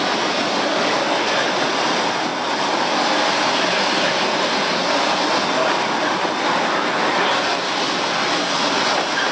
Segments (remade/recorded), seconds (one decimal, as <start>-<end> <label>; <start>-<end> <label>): 0.0-9.3 recorded